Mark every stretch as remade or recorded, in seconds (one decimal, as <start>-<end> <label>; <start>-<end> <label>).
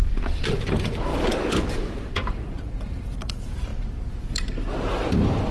0.0-5.5 remade